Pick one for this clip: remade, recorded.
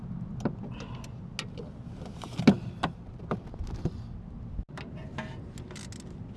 recorded